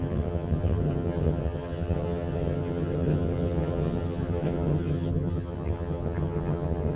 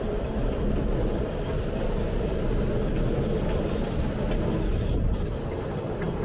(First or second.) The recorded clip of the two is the second